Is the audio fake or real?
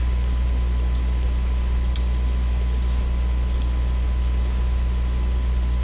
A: real